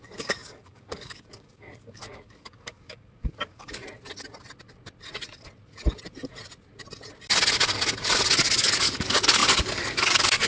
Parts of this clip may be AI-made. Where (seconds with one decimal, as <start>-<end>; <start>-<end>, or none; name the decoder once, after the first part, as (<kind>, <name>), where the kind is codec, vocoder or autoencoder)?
0.0-3.8 (codec, DAC); 8.6-10.5